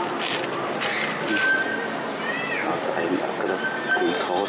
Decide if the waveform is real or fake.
real